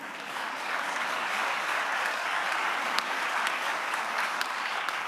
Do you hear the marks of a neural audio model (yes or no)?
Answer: yes